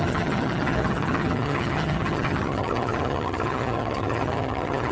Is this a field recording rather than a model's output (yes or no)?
no